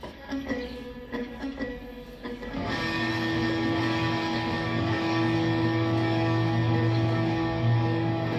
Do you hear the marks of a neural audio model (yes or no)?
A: yes